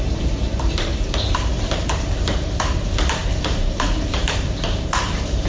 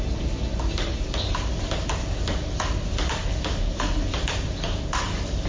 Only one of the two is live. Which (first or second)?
second